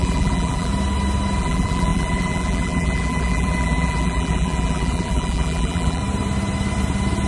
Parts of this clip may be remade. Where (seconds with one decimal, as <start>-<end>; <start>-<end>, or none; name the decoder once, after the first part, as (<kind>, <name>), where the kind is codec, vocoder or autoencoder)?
0.0-0.7 (vocoder, BigVGAN v2); 1.4-6.0